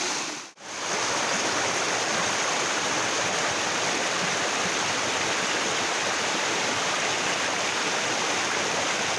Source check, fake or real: real